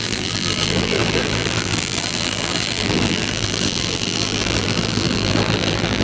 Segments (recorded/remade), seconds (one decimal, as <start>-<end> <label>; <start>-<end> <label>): 0.0-6.0 remade